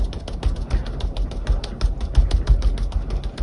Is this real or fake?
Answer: real